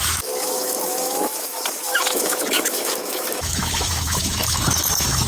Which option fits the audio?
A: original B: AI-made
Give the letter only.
B